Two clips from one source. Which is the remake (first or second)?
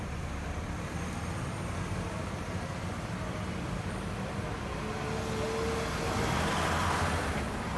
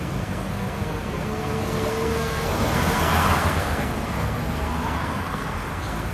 second